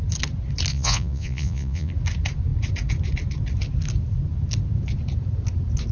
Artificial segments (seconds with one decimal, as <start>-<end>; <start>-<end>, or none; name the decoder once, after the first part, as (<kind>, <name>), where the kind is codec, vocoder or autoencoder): 0.7-1.9 (vocoder, Vocos)